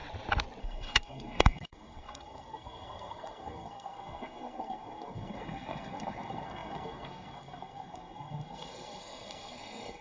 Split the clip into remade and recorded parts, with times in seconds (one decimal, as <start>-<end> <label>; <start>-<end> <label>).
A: 0.0-0.6 recorded; 0.6-10.0 remade